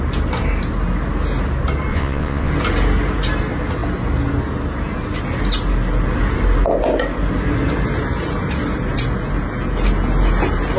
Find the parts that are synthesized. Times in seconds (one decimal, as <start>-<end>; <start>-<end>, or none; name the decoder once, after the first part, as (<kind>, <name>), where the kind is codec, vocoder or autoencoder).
1.9-2.5 (vocoder, Vocos)